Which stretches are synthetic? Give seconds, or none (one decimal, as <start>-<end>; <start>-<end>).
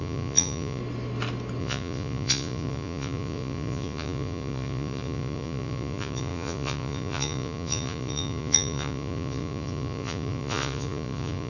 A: 0.0-0.8; 1.6-11.5